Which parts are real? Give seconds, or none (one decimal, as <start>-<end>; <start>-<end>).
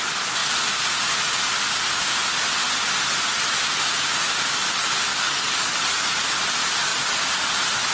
0.0-5.1; 5.8-7.9